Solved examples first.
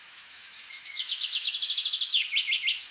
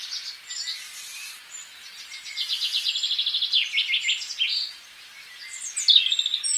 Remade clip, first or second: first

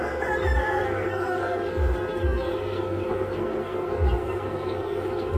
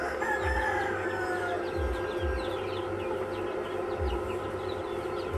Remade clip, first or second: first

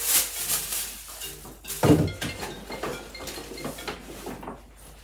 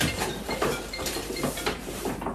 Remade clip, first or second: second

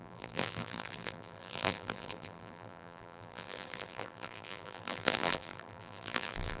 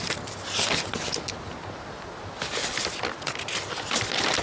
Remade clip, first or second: first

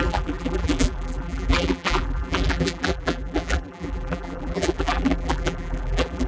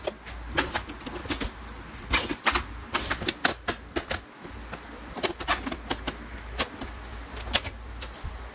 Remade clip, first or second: first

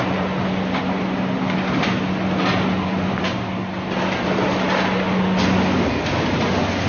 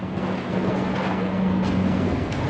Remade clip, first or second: second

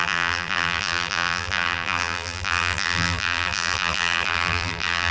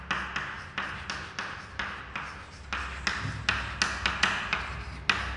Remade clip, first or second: first